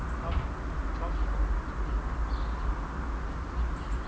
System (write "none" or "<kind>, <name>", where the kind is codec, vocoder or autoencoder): none